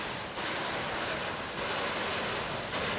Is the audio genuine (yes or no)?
yes